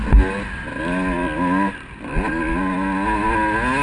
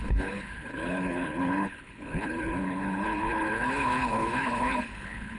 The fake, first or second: second